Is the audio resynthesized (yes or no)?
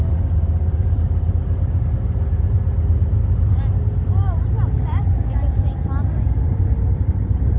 no